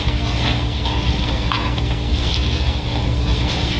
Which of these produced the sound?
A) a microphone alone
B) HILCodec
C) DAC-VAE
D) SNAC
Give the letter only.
D